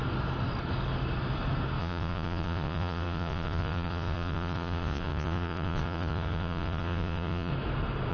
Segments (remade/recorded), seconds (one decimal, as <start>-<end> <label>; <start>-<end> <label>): 0.0-1.8 recorded; 1.8-7.5 remade; 7.5-8.1 recorded